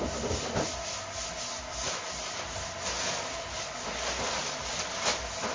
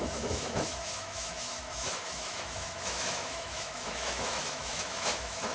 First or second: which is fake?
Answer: second